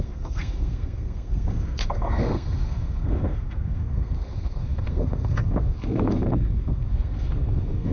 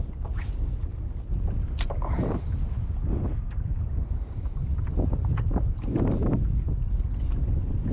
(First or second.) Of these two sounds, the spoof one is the first